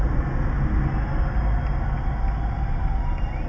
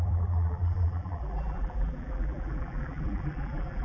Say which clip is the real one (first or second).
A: first